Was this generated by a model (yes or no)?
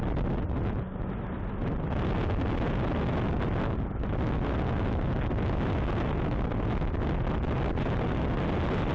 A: no